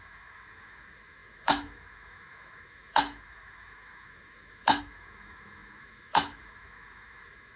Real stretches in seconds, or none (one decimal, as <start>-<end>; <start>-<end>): none